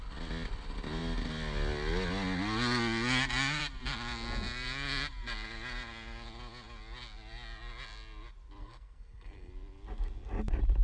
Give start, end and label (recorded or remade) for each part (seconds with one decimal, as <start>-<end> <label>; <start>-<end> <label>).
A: 0.0-8.6 recorded; 8.6-9.5 remade; 9.5-10.8 recorded